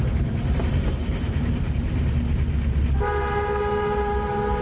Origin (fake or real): fake